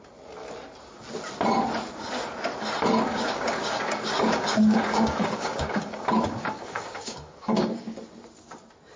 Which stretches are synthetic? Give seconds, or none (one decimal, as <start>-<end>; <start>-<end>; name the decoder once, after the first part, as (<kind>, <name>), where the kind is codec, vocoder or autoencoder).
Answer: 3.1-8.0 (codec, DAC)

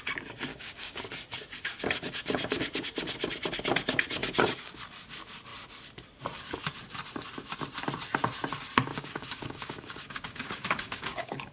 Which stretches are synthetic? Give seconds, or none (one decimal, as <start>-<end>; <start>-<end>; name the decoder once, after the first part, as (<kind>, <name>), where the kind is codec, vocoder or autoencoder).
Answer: 0.5-1.0 (codec, DAC); 4.2-4.8; 8.9-11.5

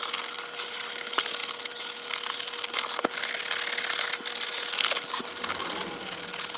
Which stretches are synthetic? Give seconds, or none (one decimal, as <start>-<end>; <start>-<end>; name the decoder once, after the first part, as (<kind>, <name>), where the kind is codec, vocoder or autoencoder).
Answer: none